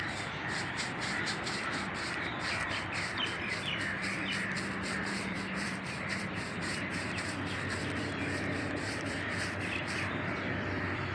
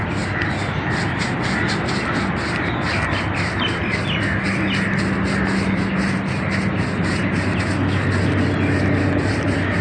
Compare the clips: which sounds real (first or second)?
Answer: second